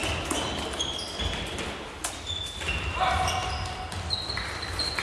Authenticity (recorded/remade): recorded